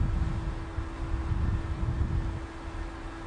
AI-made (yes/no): no